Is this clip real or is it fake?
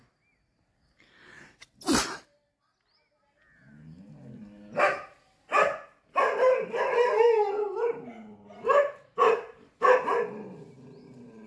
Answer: real